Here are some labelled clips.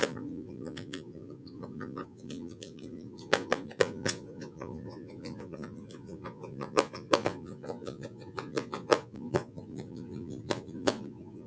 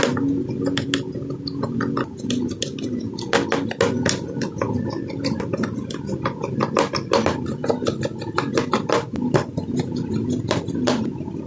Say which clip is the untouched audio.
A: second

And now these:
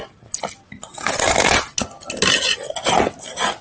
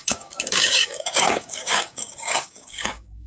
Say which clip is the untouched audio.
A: first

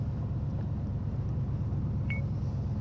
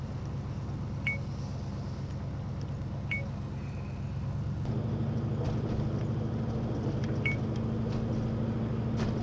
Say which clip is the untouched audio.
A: second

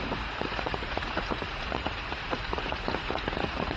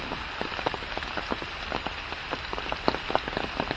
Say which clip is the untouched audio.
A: second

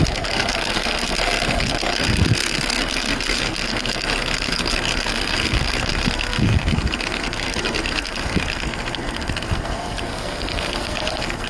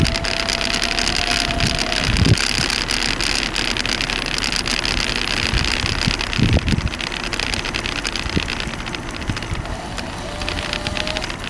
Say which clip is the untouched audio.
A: second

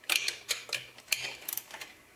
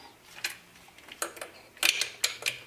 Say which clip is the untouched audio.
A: second